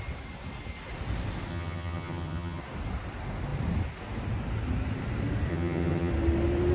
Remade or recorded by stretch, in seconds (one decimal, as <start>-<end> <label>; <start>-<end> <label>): 0.0-1.5 recorded; 1.5-2.6 remade; 2.6-5.5 recorded; 5.5-6.1 remade; 6.1-6.7 recorded